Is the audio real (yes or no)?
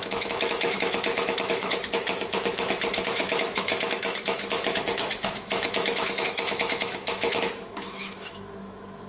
no